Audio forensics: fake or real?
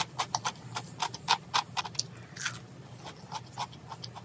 real